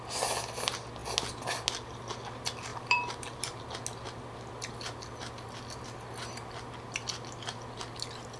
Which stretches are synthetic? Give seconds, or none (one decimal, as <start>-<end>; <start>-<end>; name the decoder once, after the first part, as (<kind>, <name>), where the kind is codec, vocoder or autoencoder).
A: 2.7-3.6 (vocoder, BigVGAN v2)